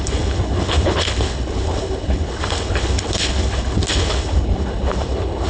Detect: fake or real fake